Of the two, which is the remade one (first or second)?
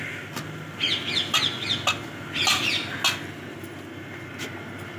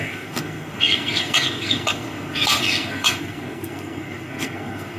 second